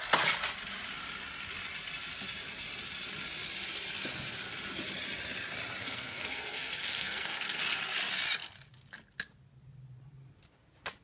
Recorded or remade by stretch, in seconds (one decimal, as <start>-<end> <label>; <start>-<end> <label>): 0.0-5.8 recorded; 5.8-7.6 remade; 7.6-11.0 recorded